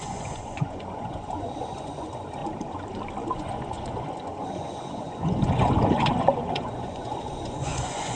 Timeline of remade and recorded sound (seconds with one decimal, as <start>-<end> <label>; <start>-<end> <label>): 0.0-2.4 remade; 2.4-3.3 recorded; 3.3-8.2 remade